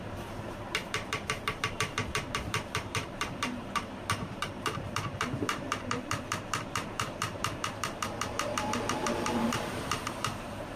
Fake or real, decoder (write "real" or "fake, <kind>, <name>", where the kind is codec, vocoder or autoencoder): fake, vocoder, BigVGAN v2